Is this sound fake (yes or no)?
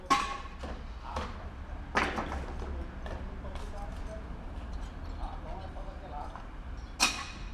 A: no